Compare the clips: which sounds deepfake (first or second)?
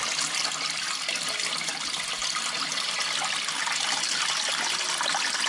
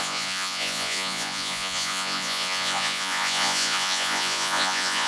second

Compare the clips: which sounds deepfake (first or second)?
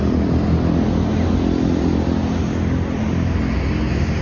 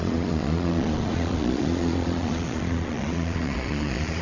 second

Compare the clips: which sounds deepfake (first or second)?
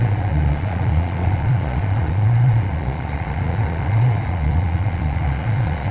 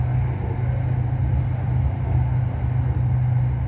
first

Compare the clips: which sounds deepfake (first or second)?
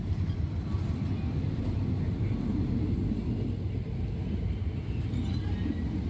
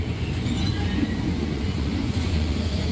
second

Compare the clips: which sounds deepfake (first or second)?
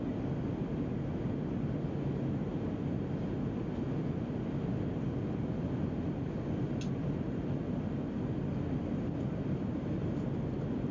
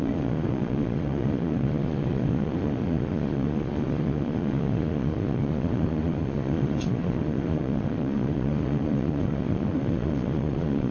second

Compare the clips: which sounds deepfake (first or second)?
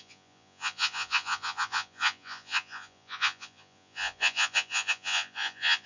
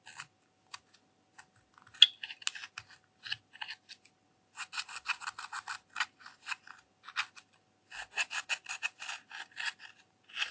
first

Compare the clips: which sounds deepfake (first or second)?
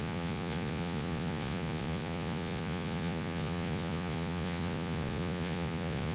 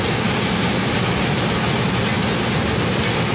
first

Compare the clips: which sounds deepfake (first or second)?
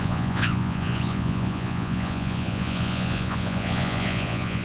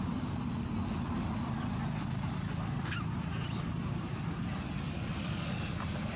first